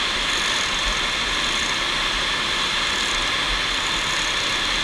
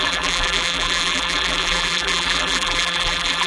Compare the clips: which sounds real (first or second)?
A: first